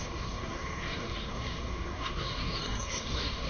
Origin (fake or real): fake